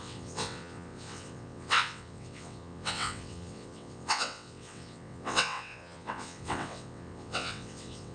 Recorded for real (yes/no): no